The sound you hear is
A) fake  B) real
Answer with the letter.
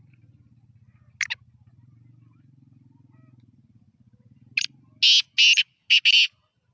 B